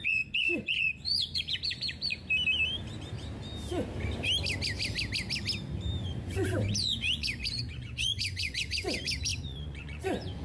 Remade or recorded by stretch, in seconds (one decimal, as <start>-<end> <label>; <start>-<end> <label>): 0.0-2.2 remade; 2.2-6.0 recorded; 6.0-10.4 remade